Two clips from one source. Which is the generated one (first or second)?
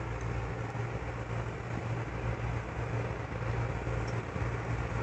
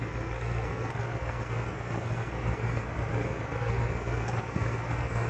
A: second